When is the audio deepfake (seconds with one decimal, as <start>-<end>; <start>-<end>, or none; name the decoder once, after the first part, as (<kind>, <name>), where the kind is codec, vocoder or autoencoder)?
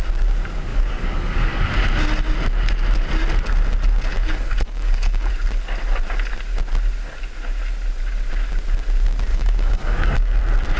0.7-1.8 (codec, DAC); 4.1-5.3; 9.3-10.4